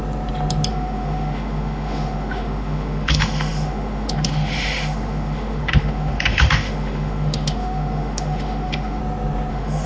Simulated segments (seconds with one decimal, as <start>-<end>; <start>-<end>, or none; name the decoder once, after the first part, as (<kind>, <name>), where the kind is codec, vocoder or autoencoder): 0.7-9.0 (autoencoder, DAC-VAE); 9.5-9.9